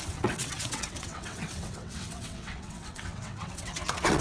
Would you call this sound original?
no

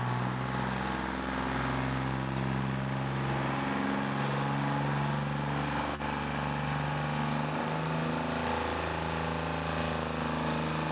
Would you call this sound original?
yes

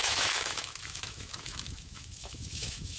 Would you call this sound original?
no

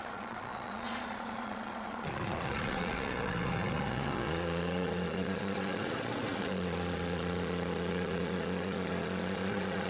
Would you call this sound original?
no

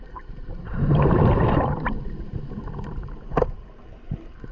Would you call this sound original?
no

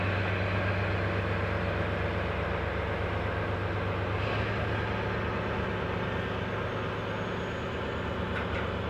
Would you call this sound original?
yes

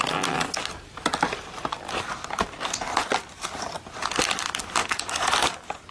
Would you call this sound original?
yes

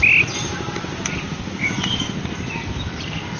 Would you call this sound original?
yes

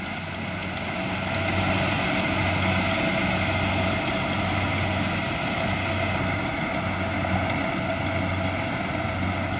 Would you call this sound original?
yes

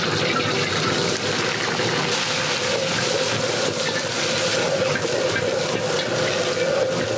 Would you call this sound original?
yes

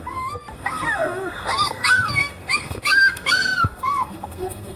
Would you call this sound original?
no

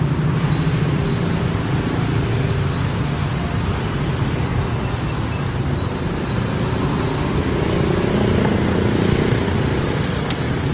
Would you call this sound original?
yes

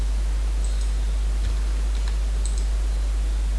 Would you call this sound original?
yes